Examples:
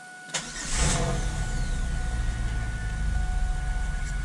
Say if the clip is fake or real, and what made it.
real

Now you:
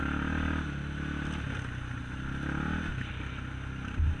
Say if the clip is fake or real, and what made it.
real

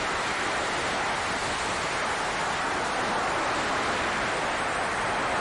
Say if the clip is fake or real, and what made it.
real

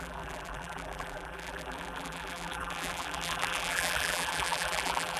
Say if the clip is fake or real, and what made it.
fake, vocoder, BigVGAN v2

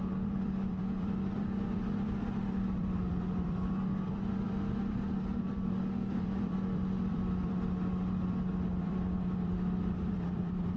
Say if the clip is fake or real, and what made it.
fake, vocoder, BigVGAN v2